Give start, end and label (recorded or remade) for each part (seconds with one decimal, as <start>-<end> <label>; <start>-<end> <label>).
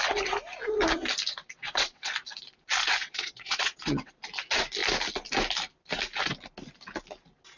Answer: 0.0-1.6 recorded; 1.6-2.1 remade; 2.1-3.0 recorded; 3.0-4.1 remade; 4.1-7.6 recorded